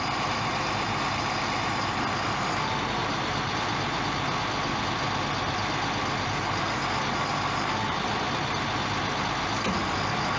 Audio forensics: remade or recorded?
recorded